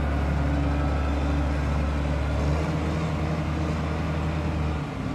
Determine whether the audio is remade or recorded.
recorded